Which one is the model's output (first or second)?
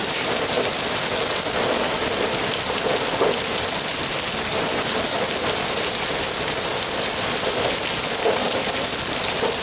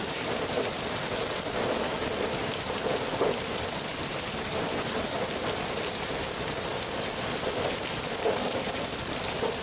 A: second